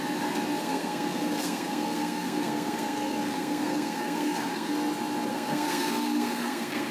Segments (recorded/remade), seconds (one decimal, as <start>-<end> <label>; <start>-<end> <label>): 0.0-0.6 recorded; 0.6-4.7 remade; 4.7-5.3 recorded; 5.3-6.9 remade